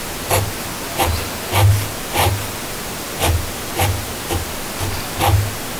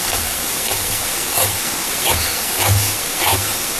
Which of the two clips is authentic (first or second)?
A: first